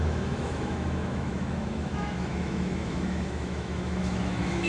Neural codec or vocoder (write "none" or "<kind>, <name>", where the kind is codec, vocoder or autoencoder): autoencoder, DAC-VAE